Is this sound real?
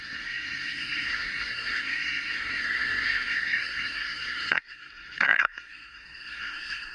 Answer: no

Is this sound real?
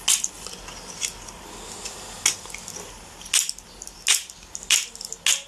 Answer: yes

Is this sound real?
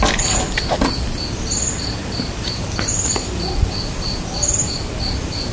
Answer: yes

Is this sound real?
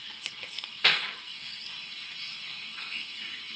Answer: no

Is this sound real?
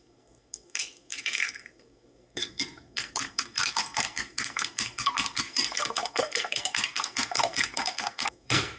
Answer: no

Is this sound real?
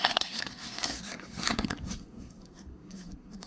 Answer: no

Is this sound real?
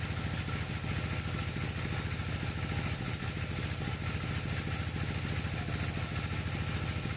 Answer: yes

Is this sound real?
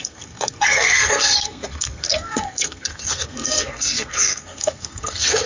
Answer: no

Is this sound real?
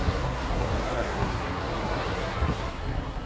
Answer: no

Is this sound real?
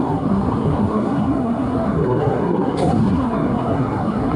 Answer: no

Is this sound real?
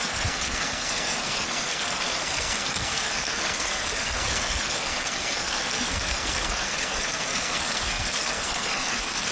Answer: no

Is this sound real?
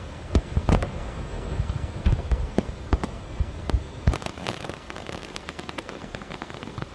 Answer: no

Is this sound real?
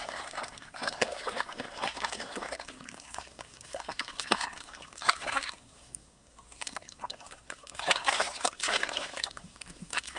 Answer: no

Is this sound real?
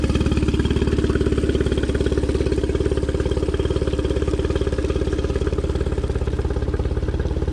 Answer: yes